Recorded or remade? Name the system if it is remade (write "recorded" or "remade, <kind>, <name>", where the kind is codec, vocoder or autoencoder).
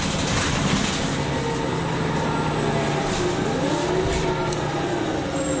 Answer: recorded